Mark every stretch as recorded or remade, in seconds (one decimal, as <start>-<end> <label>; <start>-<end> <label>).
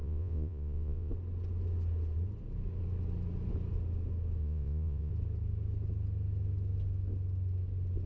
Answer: 0.0-1.1 remade; 1.1-4.4 recorded; 4.4-5.1 remade; 5.1-8.1 recorded